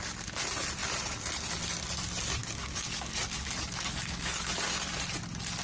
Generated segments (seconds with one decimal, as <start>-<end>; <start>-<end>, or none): 2.4-4.5